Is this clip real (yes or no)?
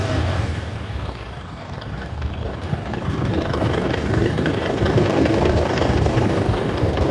no